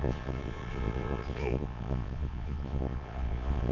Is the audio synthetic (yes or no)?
yes